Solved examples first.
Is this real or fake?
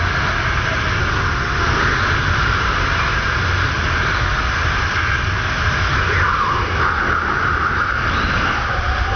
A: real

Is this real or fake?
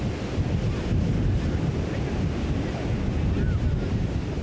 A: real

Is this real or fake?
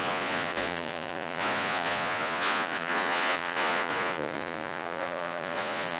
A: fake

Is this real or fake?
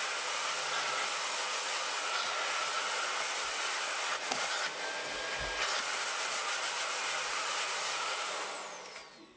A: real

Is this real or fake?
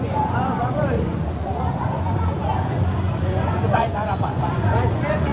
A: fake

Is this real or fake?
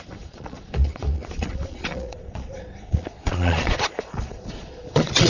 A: fake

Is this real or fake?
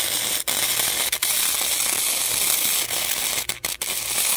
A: real